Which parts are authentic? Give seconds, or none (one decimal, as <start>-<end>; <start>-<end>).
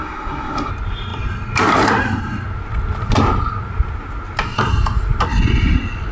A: 0.7-6.1